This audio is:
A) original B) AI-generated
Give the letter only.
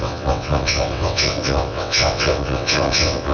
B